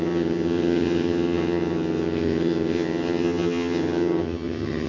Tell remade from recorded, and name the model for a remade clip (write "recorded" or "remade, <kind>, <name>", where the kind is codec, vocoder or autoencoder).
remade, vocoder, HiFi-GAN